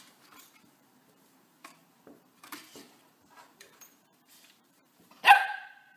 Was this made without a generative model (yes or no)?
no